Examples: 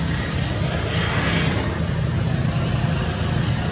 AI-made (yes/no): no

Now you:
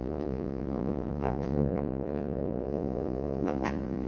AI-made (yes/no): yes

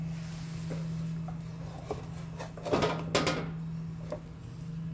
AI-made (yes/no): no